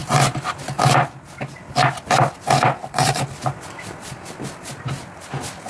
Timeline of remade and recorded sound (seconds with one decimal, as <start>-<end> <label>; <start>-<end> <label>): 0.0-0.8 remade; 0.8-2.8 recorded; 2.8-5.3 remade; 5.3-5.7 recorded